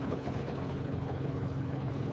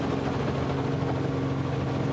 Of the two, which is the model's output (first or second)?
first